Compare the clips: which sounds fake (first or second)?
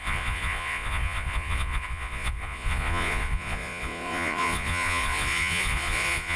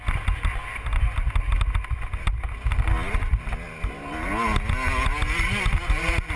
first